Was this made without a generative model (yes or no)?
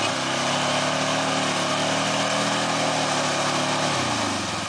yes